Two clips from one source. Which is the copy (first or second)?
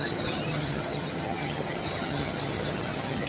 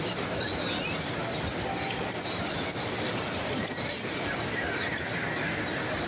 first